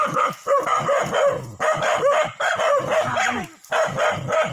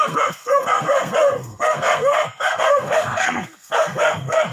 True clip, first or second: first